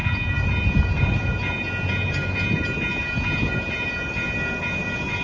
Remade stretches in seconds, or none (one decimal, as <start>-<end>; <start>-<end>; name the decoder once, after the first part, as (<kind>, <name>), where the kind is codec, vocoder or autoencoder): none